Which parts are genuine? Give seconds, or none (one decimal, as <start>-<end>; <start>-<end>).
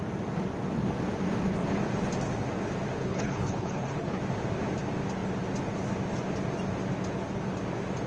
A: 0.0-3.0; 4.2-8.1